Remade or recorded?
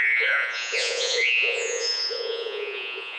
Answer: remade